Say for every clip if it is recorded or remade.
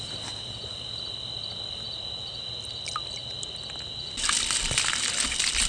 recorded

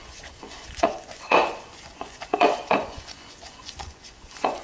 remade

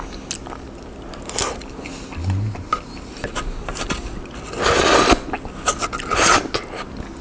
recorded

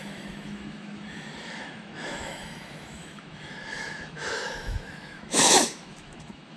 remade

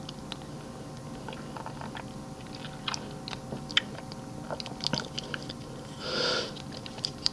recorded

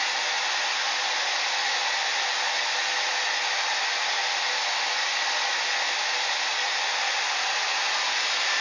recorded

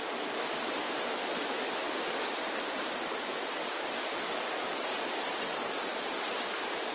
recorded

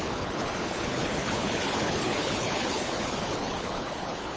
remade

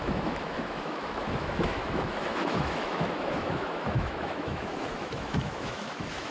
remade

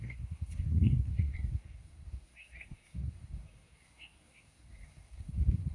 remade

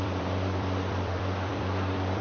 remade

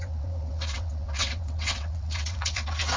remade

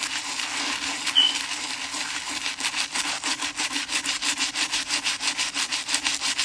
recorded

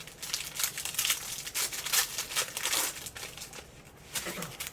recorded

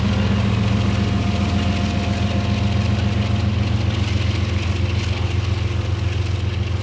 recorded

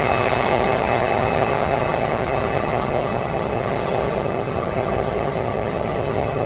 remade